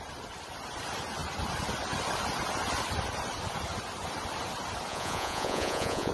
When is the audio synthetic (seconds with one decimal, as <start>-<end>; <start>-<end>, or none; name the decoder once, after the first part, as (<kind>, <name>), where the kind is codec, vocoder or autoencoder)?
4.9-6.1 (vocoder, Vocos)